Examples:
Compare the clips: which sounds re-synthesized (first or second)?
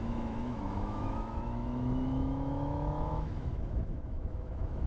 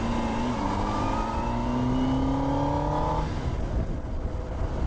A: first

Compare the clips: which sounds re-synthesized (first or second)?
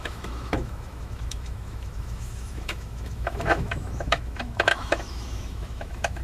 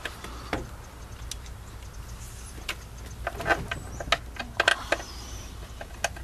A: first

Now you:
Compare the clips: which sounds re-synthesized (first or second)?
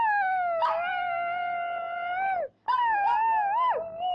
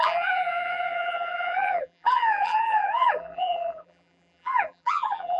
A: second